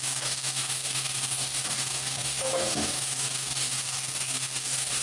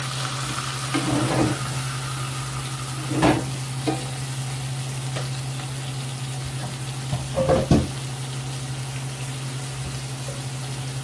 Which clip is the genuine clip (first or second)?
second